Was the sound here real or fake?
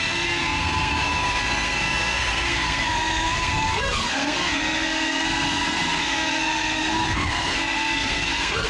fake